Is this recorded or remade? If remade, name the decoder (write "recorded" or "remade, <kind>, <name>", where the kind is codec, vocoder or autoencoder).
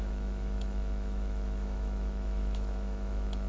remade, autoencoder, DAC-VAE